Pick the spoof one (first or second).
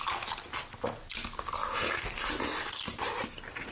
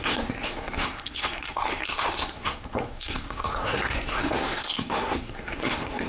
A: second